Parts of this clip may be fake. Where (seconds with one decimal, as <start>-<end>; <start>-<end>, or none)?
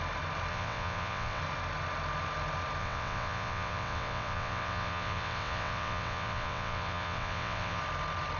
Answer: 0.5-1.4; 2.8-7.8